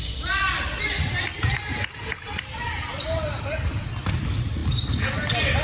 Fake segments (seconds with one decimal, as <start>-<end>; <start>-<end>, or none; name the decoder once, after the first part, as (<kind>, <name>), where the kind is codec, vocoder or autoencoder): 0.0-4.6 (vocoder, BigVGAN v2)